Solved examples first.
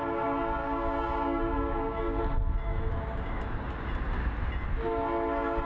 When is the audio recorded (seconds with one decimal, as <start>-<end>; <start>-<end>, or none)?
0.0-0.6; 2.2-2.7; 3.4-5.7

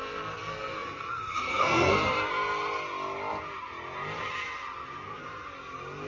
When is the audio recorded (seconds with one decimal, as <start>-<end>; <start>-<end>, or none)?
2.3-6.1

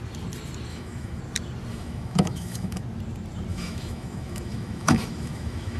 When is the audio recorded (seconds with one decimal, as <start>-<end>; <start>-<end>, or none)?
0.0-0.7; 1.2-1.7; 2.8-3.5

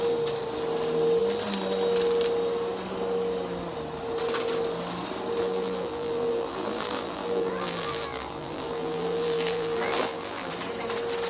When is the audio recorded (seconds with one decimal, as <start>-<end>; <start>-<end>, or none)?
0.0-5.4; 10.5-11.3

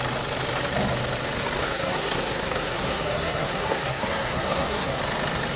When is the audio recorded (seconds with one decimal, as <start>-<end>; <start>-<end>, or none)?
0.0-1.6; 5.0-5.6

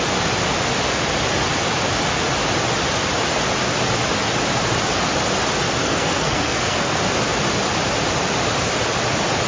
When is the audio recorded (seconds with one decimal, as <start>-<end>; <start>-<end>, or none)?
0.0-5.8; 7.0-9.5